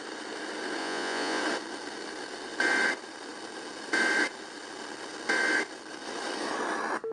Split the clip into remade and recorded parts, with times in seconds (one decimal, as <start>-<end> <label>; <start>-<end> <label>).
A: 0.0-0.8 recorded; 0.8-1.4 remade; 1.4-7.1 recorded